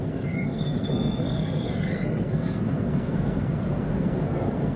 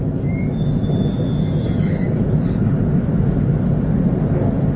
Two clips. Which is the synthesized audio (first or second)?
first